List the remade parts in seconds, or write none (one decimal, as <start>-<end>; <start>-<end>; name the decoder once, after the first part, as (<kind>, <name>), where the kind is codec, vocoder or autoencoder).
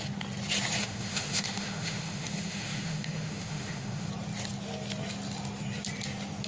0.8-4.1 (autoencoder, DAC-VAE)